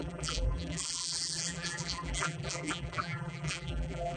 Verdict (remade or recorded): remade